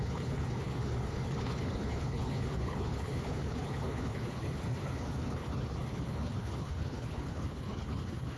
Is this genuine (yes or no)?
no